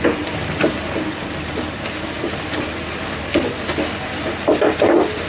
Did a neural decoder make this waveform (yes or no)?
yes